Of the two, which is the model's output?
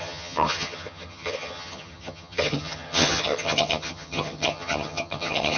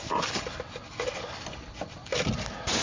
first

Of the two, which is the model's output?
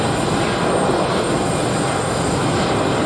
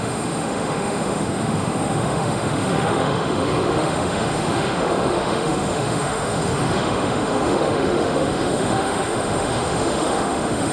second